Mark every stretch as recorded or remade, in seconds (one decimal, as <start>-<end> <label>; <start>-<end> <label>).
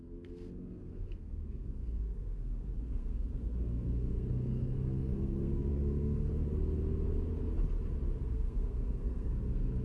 0.0-6.3 remade; 6.3-8.2 recorded; 8.2-9.8 remade